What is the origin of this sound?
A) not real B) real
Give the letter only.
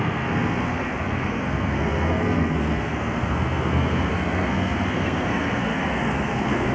A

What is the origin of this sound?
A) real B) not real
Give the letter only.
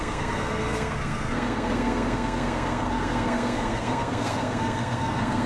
B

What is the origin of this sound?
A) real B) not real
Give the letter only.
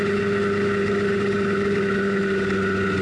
A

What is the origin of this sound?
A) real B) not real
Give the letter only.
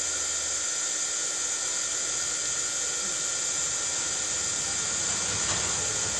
A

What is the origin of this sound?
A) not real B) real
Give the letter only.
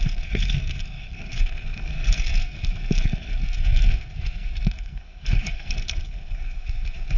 A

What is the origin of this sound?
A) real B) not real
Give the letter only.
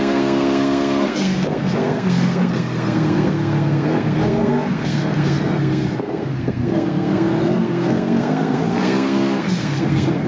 B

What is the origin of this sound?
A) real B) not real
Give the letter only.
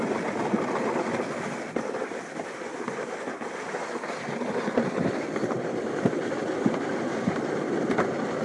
A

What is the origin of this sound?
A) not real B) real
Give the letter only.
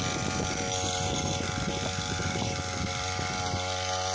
B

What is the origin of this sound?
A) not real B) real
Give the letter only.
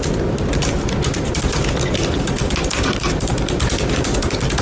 B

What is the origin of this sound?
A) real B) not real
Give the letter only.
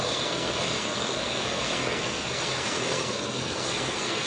B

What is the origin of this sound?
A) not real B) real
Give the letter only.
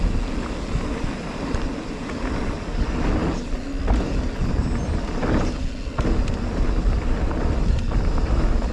B